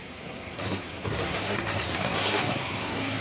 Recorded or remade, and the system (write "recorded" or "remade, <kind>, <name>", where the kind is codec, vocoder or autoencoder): remade, codec, SNAC